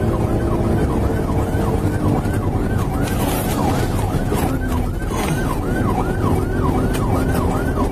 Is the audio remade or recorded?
recorded